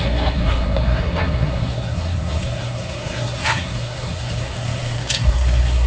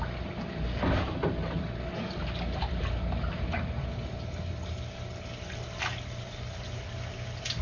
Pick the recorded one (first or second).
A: second